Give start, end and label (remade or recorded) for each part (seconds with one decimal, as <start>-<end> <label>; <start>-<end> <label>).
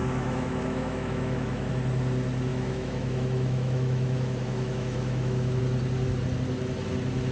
0.0-1.7 remade; 1.7-2.5 recorded; 2.5-5.6 remade; 5.6-7.3 recorded